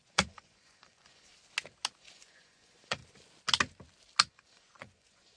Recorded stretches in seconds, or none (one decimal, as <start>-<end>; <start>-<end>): 1.3-2.0; 3.0-4.3